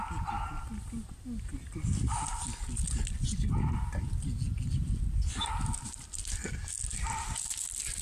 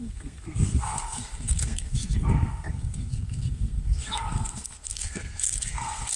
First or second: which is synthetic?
second